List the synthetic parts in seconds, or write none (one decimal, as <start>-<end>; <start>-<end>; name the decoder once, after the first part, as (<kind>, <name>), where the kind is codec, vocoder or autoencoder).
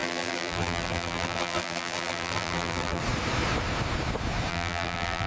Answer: 0.0-3.0 (vocoder, BigVGAN v2); 4.5-5.3